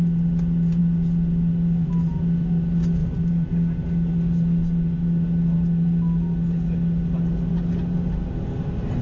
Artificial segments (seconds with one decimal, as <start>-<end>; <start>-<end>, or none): none